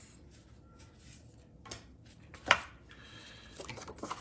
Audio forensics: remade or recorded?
recorded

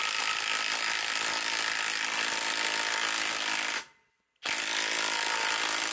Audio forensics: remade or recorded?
recorded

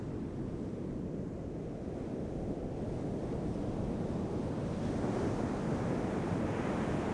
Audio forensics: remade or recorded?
recorded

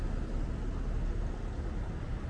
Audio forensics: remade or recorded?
recorded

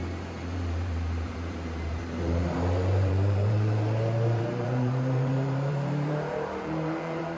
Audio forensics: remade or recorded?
remade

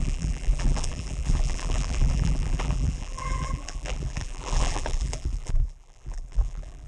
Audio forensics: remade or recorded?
remade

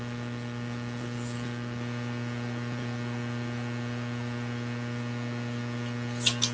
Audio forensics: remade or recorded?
recorded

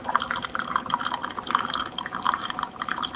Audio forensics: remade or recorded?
remade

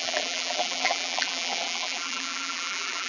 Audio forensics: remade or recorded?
remade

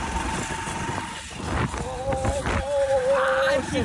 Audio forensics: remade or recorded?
recorded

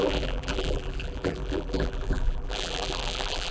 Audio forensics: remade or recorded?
remade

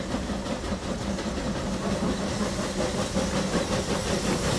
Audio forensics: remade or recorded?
recorded